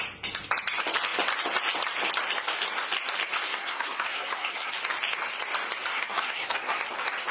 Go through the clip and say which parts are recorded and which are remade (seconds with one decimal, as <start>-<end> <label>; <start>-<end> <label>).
0.0-3.5 recorded; 3.5-4.7 remade; 4.7-5.9 recorded; 5.9-6.8 remade; 6.8-7.3 recorded